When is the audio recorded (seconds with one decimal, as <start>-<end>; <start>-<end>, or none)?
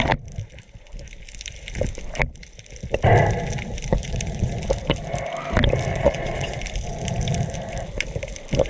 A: 0.0-3.9; 4.5-5.9; 6.6-8.7